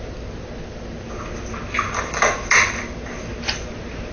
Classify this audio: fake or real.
real